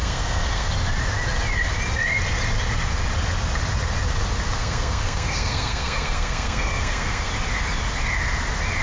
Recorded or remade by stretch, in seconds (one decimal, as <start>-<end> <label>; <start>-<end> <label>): 0.0-0.7 remade; 0.7-4.6 recorded; 4.6-7.3 remade; 7.3-8.8 recorded